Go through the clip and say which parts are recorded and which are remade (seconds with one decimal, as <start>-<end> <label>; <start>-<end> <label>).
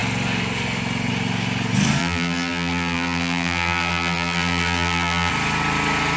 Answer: 0.0-2.0 recorded; 2.0-5.3 remade; 5.3-6.2 recorded